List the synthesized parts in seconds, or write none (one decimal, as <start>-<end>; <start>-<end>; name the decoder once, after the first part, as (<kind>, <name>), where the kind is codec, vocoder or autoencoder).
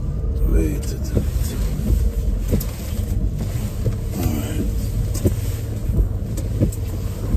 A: 5.8-6.8 (vocoder, BigVGAN v2)